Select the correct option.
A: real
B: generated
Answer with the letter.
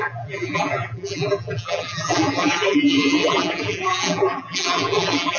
B